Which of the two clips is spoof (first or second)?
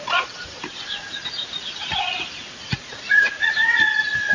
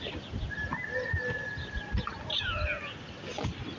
first